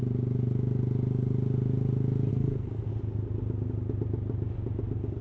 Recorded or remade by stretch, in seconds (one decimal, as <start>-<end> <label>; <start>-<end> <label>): 0.0-2.3 recorded; 2.3-2.9 remade; 2.9-5.2 recorded